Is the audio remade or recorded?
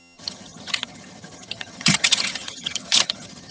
remade